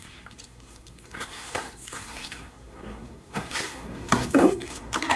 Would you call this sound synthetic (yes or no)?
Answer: yes